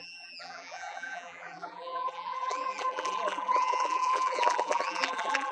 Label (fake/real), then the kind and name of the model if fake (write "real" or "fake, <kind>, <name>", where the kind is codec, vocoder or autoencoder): fake, vocoder, BigVGAN v2